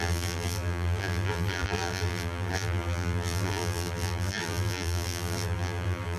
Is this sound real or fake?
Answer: fake